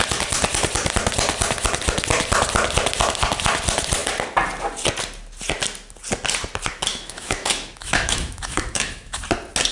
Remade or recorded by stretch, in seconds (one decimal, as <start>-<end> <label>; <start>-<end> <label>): 0.0-6.9 recorded; 6.9-9.2 remade; 9.2-9.7 recorded